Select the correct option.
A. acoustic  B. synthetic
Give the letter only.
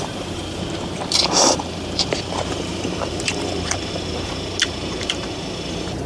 B